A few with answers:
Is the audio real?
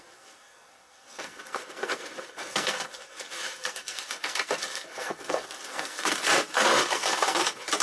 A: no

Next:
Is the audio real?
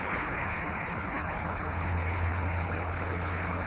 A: no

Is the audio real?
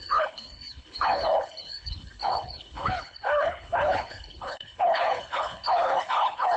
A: no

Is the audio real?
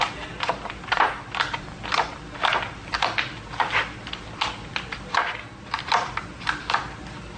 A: yes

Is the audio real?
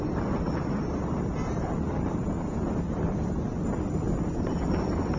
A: yes